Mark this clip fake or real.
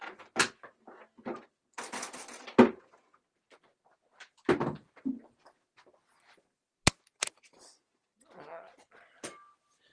real